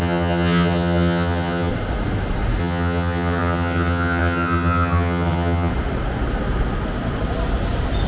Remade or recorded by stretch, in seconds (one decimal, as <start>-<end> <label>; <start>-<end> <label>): 0.0-1.7 remade; 1.7-2.6 recorded; 2.6-5.7 remade; 5.7-8.1 recorded